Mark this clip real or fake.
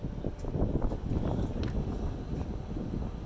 real